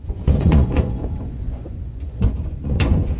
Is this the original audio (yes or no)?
no